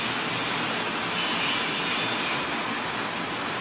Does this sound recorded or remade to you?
recorded